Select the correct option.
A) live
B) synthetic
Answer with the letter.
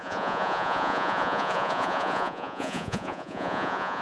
B